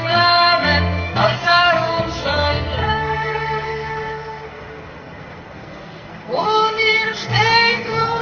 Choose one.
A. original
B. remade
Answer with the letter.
B